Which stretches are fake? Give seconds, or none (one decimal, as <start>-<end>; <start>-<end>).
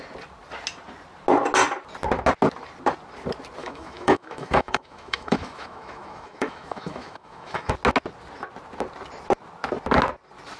3.6-7.7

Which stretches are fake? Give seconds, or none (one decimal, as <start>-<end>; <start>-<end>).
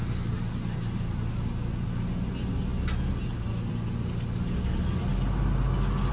none